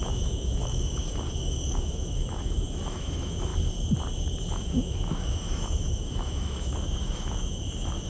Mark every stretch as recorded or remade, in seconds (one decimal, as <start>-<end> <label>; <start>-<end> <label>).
0.0-3.5 remade; 3.5-4.5 recorded; 4.5-8.1 remade